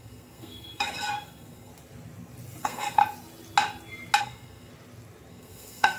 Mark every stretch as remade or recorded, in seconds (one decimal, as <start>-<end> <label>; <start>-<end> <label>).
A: 0.0-1.7 remade; 1.7-2.6 recorded; 2.6-3.0 remade; 3.0-4.2 recorded; 4.2-4.7 remade; 4.7-5.3 recorded; 5.3-6.0 remade